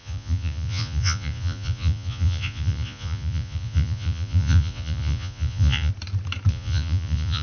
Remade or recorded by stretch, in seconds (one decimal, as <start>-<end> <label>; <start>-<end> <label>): 0.0-5.9 remade; 5.9-6.5 recorded; 6.5-7.4 remade